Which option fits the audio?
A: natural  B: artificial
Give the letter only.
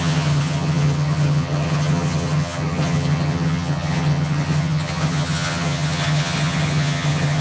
B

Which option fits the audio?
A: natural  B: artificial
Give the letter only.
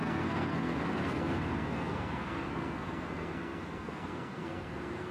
B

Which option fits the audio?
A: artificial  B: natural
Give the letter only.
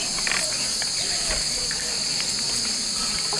B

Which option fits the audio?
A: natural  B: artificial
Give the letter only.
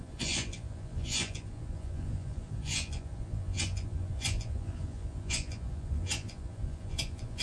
B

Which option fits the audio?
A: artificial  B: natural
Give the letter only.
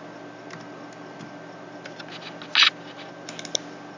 B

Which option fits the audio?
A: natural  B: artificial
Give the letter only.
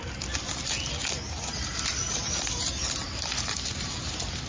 A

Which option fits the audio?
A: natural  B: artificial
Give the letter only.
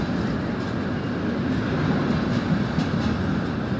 A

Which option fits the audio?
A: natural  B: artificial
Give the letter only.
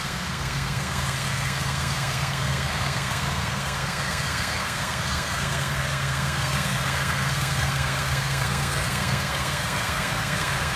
B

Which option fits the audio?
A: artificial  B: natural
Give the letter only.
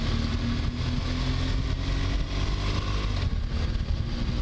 B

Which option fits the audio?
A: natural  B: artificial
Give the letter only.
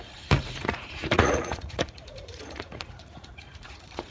B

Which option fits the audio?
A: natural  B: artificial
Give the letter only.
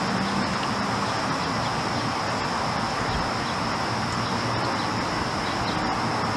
A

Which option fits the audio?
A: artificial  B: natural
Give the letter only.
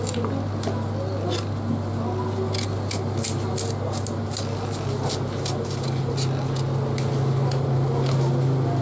B